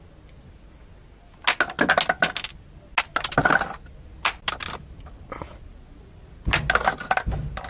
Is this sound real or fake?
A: real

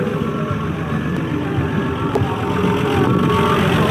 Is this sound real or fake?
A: real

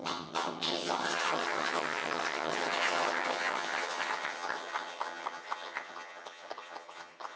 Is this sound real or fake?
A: fake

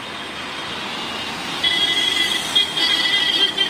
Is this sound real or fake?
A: real